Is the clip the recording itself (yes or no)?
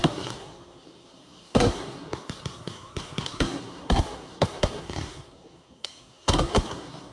no